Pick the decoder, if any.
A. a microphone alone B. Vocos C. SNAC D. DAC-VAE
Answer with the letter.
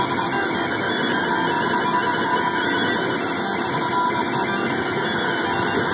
A